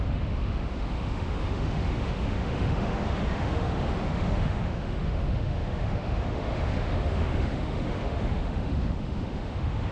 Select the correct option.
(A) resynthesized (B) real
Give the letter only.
A